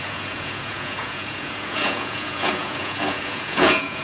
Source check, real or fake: fake